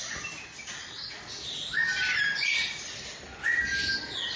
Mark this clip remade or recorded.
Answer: recorded